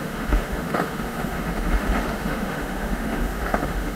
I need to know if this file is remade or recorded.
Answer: remade